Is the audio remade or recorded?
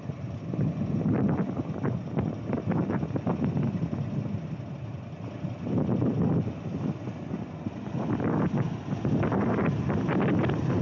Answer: recorded